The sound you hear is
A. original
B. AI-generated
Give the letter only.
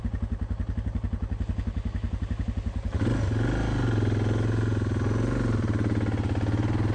A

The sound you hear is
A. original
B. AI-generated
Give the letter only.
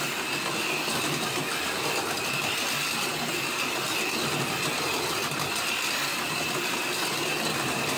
A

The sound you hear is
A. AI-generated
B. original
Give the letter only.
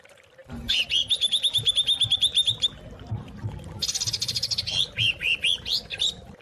B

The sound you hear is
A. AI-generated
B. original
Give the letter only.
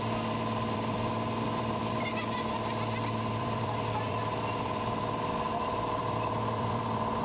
A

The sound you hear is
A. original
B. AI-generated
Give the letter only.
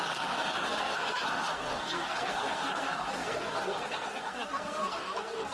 B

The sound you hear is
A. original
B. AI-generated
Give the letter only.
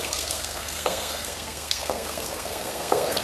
B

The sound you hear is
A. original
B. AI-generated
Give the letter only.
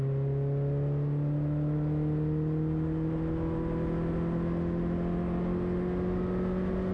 A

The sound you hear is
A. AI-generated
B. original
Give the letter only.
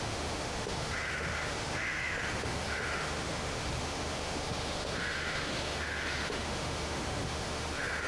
A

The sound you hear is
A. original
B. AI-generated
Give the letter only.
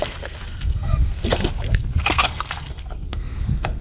B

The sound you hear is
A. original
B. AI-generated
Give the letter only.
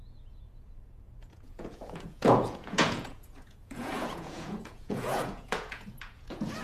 B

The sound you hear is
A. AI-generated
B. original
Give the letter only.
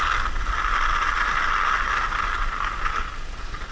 B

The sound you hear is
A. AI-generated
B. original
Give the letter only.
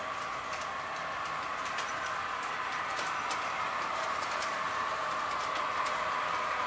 A